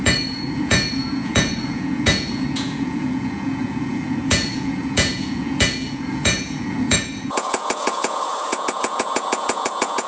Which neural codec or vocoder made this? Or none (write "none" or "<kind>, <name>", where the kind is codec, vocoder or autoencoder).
vocoder, Vocos